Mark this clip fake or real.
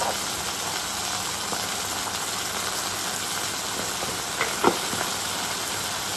real